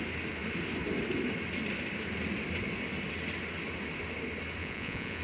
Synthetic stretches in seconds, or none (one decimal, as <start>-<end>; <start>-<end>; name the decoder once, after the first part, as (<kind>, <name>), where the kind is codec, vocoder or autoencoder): 4.6-5.2 (vocoder, Vocos)